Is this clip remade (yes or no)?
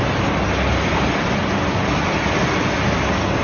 no